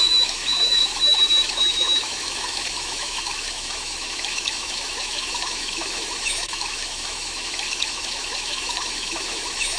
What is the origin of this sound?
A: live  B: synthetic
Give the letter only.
B